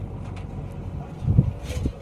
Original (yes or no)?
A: yes